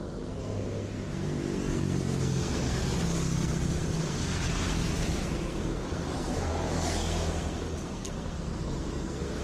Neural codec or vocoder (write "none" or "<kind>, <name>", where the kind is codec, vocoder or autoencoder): codec, SNAC